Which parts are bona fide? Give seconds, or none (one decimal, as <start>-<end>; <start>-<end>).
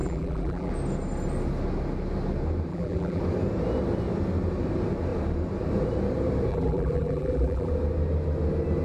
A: 0.7-2.7; 3.2-6.5; 7.7-8.8